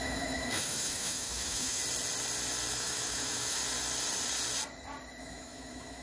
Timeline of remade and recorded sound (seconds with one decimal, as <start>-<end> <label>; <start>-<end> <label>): 0.0-1.8 remade; 1.8-2.7 recorded; 2.7-3.6 remade; 3.6-5.2 recorded; 5.2-6.0 remade